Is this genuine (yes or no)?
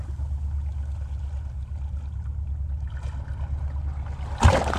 yes